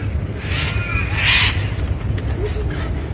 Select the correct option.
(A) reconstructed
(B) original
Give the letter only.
B